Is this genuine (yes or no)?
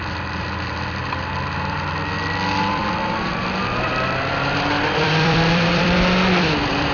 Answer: no